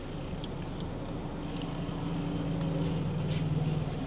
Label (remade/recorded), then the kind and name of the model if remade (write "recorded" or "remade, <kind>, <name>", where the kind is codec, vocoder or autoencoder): recorded